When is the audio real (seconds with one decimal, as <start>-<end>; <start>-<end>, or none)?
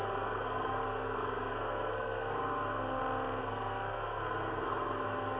3.0-3.4